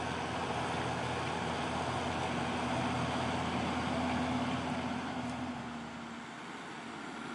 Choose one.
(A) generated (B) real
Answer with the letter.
B